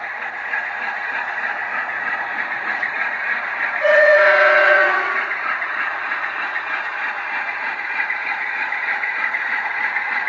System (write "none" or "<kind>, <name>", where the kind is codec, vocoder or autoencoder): vocoder, Vocos